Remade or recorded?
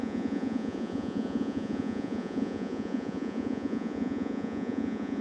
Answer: remade